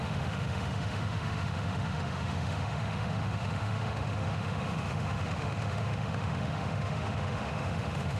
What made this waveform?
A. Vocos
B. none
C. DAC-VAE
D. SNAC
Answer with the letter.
C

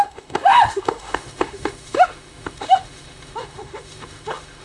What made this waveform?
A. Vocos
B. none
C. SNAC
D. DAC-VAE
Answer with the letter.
D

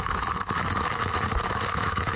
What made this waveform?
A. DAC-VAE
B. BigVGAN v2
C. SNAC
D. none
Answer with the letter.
A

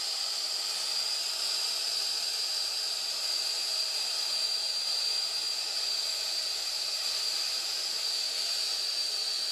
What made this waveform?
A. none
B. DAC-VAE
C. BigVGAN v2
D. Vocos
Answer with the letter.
A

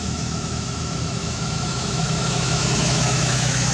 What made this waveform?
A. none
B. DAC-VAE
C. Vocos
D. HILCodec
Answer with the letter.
B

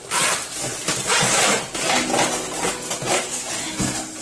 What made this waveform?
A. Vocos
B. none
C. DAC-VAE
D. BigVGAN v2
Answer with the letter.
B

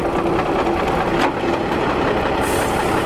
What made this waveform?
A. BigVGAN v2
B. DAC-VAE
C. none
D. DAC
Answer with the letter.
C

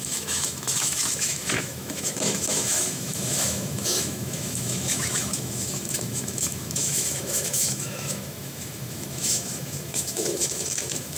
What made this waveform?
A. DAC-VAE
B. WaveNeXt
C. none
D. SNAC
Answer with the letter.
A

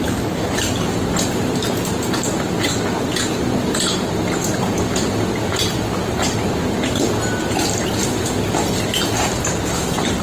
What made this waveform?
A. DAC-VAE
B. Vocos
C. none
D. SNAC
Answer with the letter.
C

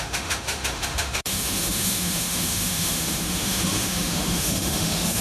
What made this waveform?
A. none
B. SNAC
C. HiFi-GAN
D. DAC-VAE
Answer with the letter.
D